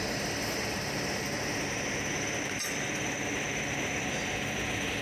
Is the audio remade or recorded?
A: recorded